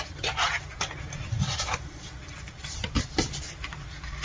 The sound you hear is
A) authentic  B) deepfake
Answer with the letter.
B